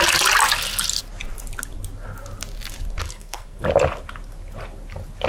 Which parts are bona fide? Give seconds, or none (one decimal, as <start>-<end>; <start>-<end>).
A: 0.0-3.0; 3.6-5.3